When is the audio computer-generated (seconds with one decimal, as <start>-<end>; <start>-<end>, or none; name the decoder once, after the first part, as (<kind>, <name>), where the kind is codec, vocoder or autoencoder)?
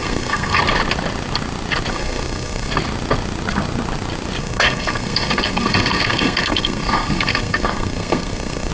0.0-0.6 (codec, SNAC); 1.9-2.7; 4.4-8.7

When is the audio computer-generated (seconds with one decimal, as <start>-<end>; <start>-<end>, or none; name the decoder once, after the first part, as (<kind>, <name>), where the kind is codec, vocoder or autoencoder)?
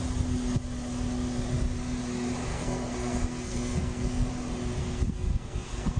2.5-4.3 (codec, SNAC); 4.8-6.0